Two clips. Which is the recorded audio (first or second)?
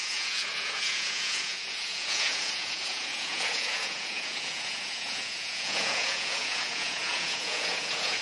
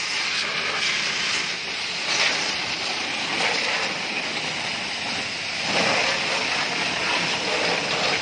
second